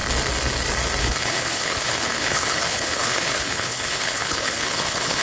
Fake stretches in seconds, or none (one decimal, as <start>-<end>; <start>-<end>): 1.0-5.2